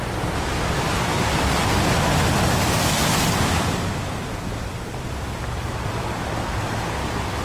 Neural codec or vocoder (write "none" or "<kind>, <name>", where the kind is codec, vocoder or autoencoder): none